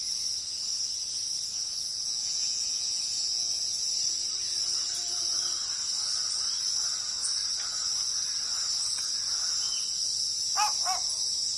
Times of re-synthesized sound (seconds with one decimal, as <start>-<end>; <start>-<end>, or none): 1.5-3.6